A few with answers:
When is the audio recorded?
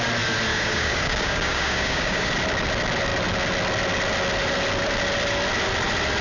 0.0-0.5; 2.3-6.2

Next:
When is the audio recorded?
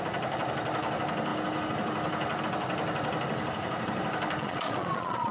0.0-4.4